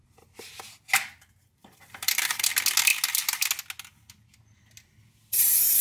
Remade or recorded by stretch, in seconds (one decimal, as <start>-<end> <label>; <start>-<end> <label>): 0.0-1.6 recorded; 1.6-2.5 remade; 2.5-5.8 recorded

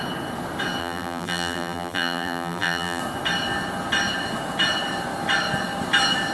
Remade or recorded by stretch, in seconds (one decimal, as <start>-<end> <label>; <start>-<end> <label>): 0.0-0.8 recorded; 0.8-3.0 remade; 3.0-6.3 recorded

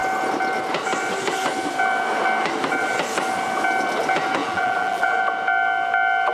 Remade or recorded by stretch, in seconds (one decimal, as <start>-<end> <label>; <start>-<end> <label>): 0.0-4.4 recorded; 4.4-5.2 remade; 5.2-6.3 recorded